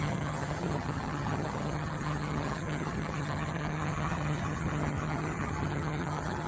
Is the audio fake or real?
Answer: fake